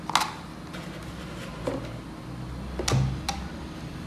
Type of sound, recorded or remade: recorded